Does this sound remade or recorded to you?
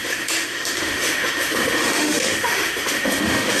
remade